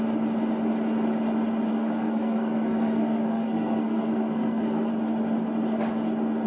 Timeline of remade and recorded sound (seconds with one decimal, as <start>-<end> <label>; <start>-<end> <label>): 0.0-1.7 recorded; 1.7-4.9 remade; 4.9-6.5 recorded